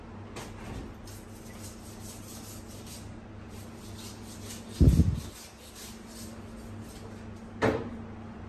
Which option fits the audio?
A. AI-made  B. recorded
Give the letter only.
B